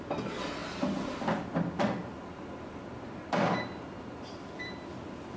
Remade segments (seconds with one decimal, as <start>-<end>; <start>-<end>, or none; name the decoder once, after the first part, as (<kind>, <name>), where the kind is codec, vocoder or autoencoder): none